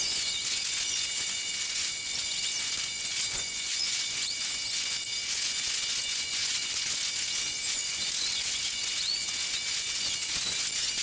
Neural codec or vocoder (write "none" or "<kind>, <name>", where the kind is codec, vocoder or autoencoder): vocoder, Vocos